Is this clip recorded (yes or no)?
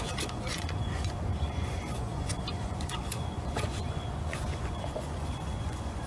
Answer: no